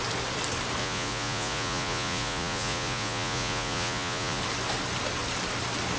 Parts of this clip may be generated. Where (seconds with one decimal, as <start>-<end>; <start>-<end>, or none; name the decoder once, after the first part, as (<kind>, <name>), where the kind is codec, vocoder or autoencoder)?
0.8-4.4 (vocoder, Vocos)